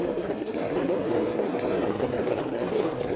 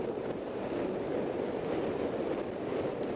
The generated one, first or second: first